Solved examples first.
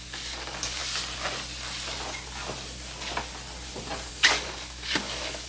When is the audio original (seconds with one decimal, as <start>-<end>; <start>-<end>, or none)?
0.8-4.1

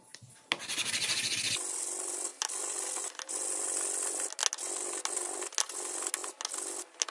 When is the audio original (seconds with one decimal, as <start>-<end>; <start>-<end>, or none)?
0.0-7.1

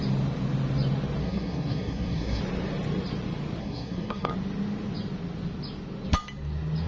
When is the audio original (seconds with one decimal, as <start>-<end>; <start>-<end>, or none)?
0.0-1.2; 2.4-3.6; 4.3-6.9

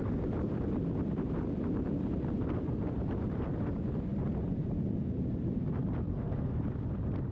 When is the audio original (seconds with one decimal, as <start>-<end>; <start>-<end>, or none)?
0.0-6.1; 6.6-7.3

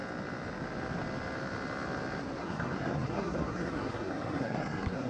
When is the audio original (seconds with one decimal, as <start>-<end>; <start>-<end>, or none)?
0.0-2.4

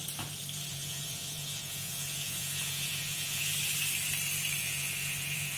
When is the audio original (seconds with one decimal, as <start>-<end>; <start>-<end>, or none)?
0.0-0.7; 3.5-4.6

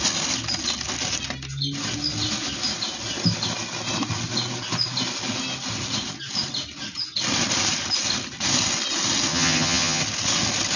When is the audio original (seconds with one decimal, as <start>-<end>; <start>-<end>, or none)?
0.0-9.3; 10.0-10.8